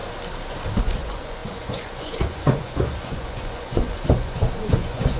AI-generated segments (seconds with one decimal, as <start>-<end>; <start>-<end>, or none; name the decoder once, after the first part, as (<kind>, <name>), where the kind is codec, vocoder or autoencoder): 0.8-5.2 (vocoder, Vocos)